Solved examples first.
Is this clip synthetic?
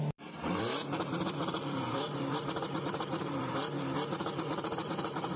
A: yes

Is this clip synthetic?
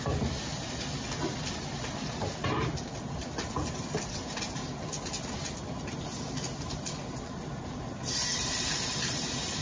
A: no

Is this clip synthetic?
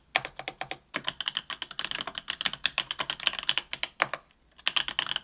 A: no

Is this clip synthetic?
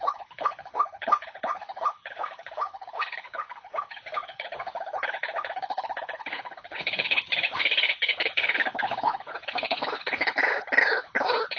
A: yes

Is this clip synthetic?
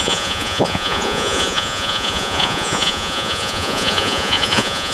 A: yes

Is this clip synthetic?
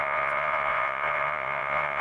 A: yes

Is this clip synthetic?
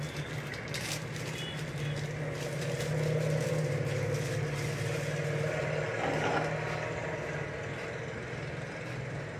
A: no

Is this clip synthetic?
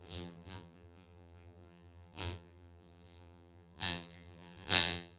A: yes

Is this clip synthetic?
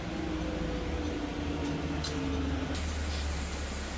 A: no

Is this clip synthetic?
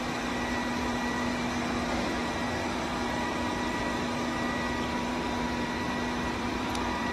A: yes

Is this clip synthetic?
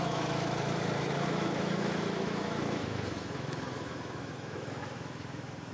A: yes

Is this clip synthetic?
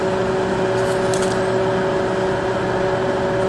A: no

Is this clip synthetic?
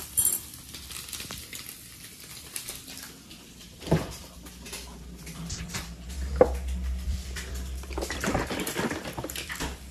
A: yes